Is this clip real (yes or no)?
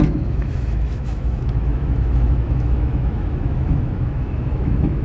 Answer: no